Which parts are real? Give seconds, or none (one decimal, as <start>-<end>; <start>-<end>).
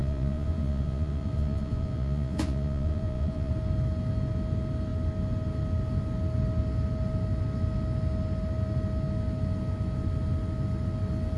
3.5-11.4